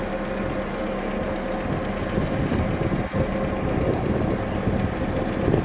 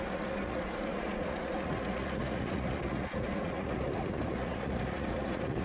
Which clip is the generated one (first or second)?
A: second